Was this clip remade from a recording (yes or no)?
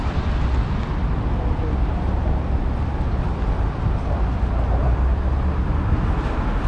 no